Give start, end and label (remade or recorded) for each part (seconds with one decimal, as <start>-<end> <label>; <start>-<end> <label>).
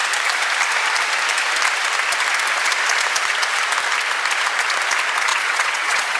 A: 0.0-5.3 recorded; 5.3-6.2 remade